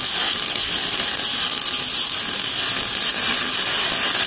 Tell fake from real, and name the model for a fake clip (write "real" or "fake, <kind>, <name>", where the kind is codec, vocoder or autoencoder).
real